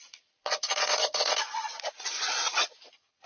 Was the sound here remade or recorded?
remade